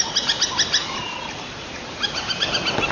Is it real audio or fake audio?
real